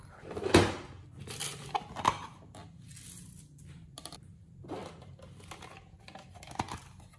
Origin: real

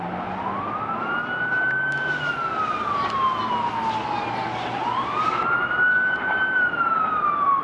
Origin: real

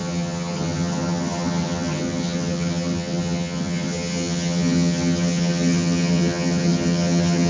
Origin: fake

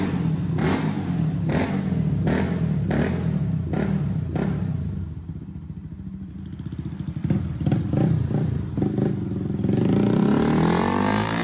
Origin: real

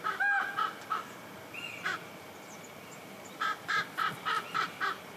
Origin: real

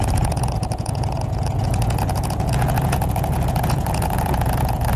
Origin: fake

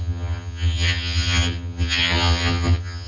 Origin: fake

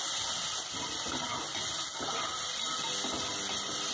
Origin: real